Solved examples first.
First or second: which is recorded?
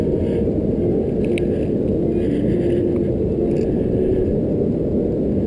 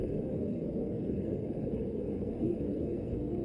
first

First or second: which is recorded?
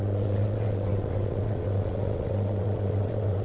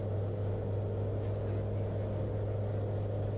second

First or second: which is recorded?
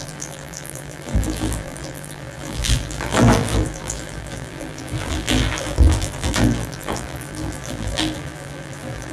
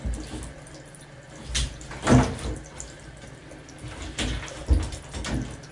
second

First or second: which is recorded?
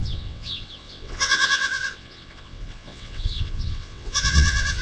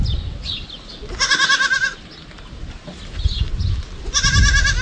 second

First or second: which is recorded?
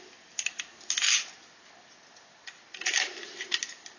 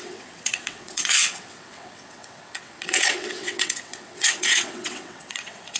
first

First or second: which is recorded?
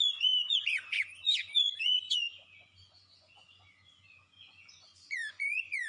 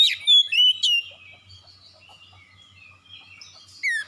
second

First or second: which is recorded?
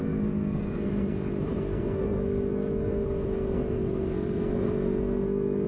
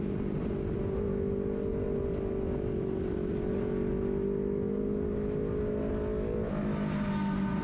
second